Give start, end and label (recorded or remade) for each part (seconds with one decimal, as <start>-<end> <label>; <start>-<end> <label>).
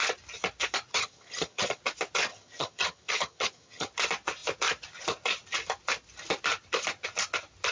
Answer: 0.0-0.9 recorded; 0.9-1.8 remade; 1.8-2.3 recorded; 2.3-3.9 remade; 3.9-7.7 recorded